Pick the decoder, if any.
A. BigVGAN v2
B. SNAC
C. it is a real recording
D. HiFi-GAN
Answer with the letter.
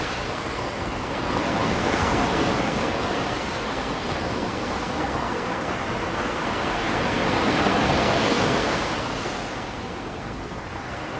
B